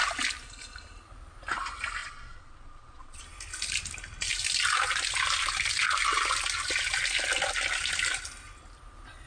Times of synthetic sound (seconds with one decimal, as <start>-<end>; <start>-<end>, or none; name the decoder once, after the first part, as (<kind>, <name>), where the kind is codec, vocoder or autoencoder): 2.0-3.2 (vocoder, Vocos)